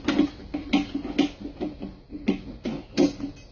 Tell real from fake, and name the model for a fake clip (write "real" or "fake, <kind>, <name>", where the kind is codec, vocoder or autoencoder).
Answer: real